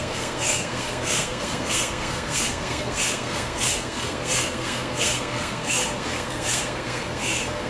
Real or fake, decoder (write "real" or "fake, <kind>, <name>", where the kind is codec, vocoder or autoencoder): fake, codec, SNAC